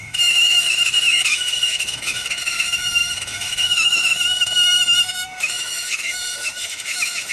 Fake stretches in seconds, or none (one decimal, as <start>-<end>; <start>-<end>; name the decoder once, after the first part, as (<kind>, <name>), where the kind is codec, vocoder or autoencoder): 0.0-7.3 (autoencoder, DAC-VAE)